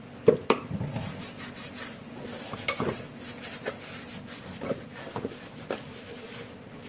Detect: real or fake real